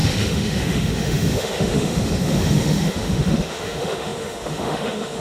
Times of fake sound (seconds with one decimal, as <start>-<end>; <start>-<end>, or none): 0.0-5.2